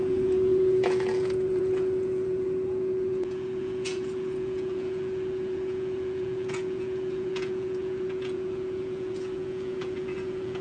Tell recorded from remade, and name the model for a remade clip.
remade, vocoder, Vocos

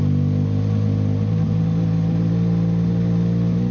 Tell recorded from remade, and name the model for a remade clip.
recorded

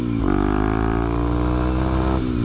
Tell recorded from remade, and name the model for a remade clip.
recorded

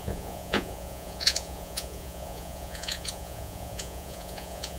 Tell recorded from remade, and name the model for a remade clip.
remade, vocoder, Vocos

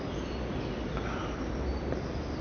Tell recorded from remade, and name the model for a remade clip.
recorded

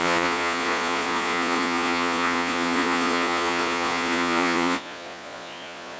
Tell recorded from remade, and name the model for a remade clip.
remade, vocoder, Vocos